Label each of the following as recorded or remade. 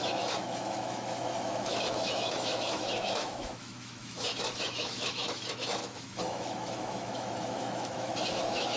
remade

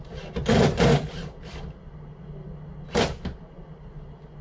recorded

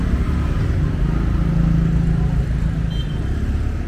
recorded